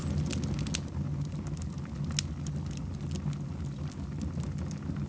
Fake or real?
real